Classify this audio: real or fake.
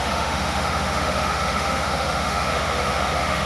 fake